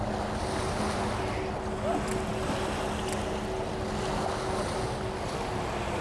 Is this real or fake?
real